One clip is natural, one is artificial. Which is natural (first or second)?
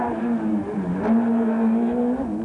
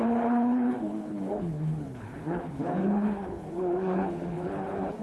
first